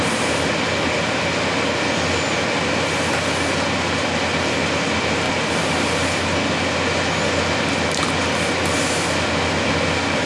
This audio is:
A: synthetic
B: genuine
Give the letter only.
B